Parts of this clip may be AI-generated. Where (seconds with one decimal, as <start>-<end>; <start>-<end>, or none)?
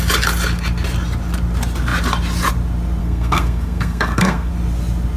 3.0-4.5